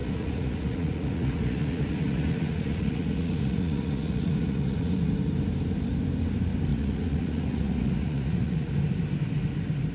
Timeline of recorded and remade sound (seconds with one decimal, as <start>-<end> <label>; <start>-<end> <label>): 0.0-5.1 remade; 5.1-6.7 recorded; 6.7-8.8 remade; 8.8-9.9 recorded